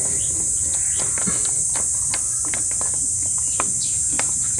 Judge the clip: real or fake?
real